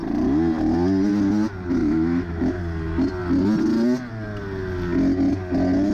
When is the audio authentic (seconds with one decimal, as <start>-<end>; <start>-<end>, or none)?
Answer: 0.0-1.8; 2.6-5.9